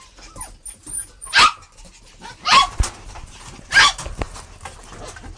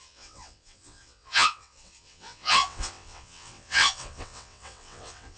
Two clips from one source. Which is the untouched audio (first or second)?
first